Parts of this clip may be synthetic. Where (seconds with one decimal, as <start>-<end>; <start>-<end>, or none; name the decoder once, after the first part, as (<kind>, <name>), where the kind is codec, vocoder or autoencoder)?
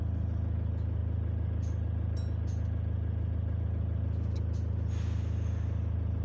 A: none